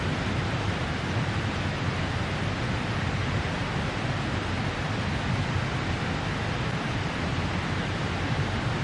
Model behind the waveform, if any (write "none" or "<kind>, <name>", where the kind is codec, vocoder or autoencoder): none